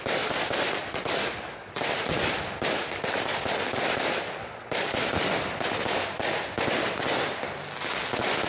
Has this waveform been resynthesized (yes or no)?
no